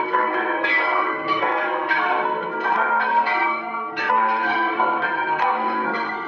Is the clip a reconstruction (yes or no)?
yes